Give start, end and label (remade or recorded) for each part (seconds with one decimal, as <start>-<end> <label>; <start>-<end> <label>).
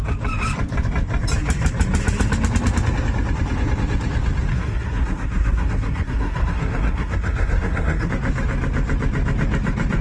0.0-4.5 recorded; 4.5-8.1 remade; 8.1-10.0 recorded